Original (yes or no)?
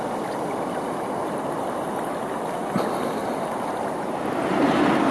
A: yes